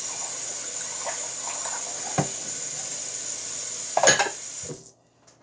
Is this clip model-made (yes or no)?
no